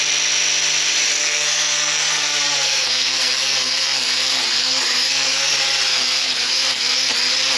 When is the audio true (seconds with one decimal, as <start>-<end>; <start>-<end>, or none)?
0.0-1.2; 5.5-5.9; 7.1-7.6